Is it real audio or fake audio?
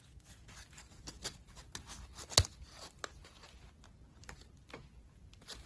real